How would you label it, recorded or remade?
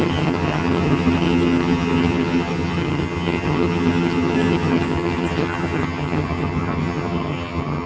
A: remade